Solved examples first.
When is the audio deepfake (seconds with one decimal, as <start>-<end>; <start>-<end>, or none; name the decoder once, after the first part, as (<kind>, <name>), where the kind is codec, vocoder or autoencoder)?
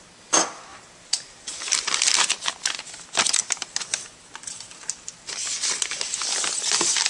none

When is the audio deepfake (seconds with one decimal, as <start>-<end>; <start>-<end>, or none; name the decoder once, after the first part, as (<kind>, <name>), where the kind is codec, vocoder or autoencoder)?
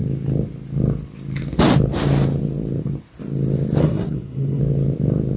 3.8-4.6 (codec, SNAC)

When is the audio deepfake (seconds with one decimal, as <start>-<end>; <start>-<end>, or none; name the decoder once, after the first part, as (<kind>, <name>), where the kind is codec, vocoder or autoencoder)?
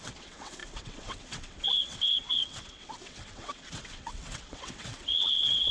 0.0-5.7 (vocoder, WaveNeXt)